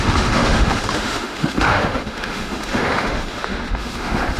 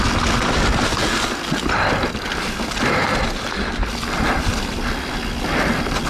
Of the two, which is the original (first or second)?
second